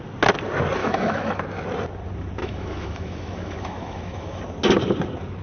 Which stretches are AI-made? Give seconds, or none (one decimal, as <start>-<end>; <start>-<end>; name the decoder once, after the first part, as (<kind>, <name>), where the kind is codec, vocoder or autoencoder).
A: 0.8-1.4 (autoencoder, DAC-VAE); 2.4-4.4